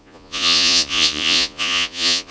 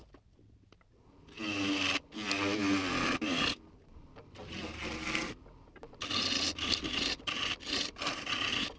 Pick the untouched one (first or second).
second